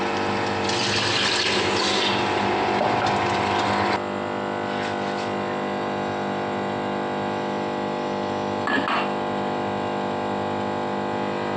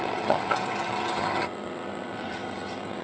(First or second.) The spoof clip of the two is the second